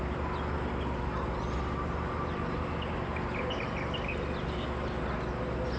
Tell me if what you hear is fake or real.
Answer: real